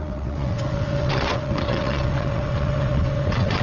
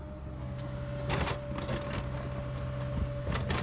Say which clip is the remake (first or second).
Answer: first